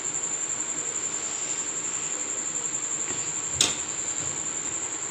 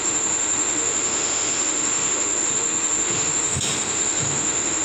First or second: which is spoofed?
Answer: second